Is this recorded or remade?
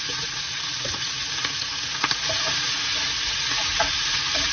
remade